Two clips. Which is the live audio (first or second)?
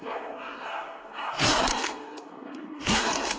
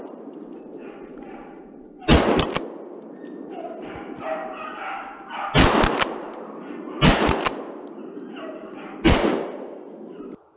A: second